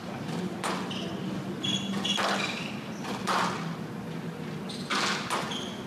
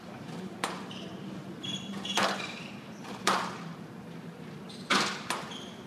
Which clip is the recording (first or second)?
first